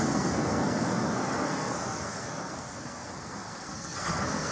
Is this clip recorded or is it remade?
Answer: remade